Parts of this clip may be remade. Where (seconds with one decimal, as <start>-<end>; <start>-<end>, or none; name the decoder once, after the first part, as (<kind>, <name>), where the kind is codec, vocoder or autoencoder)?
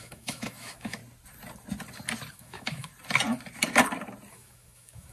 0.0-1.0 (autoencoder, DAC-VAE); 2.3-2.9; 4.3-5.1